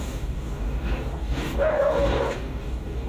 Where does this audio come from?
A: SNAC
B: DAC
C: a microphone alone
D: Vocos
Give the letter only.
B